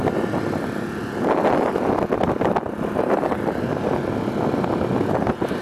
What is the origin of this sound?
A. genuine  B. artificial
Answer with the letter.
A